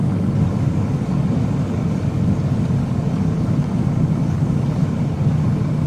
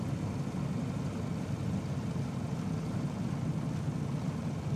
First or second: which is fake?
first